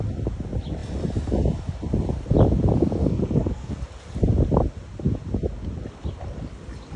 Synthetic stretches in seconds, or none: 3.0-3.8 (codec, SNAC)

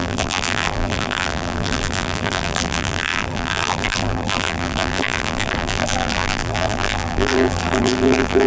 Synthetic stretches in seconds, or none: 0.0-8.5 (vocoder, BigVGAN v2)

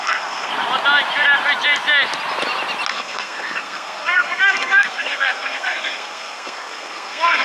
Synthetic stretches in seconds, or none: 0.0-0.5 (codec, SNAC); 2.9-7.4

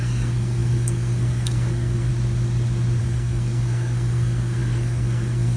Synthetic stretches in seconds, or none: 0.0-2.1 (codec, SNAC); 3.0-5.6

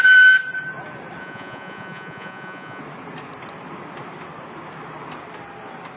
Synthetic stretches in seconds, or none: 1.2-2.8 (vocoder, Vocos)

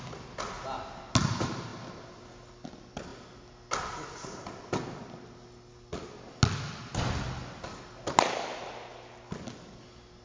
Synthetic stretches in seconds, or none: none